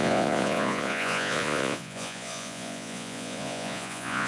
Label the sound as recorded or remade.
remade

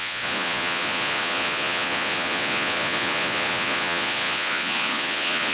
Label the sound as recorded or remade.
remade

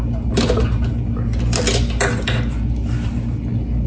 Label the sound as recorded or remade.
recorded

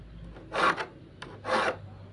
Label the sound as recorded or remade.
recorded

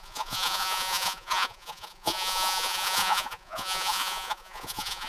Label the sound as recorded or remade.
remade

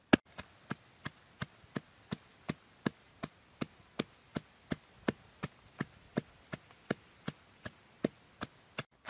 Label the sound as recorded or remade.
recorded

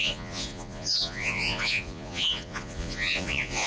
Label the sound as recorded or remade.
remade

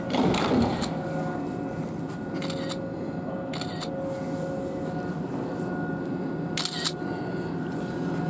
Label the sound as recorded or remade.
recorded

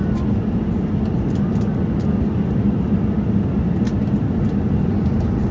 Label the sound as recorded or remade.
recorded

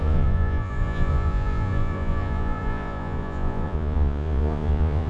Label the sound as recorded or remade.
remade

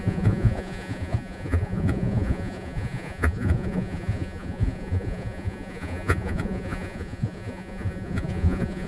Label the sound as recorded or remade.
remade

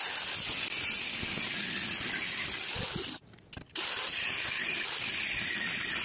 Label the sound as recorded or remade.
recorded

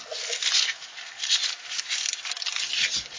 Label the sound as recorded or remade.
recorded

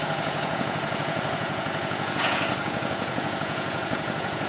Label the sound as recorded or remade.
remade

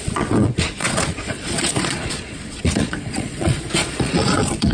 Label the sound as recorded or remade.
remade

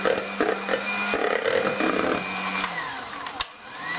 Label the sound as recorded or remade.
recorded